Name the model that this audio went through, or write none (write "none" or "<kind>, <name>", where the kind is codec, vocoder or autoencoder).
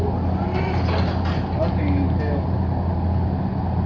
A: none